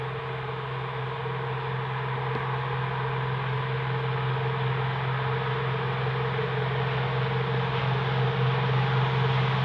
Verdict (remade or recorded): recorded